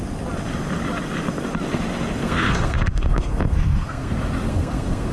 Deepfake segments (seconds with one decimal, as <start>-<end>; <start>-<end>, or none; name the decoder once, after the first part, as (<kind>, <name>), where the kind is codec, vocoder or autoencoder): 2.2-4.1 (codec, SNAC); 4.5-5.1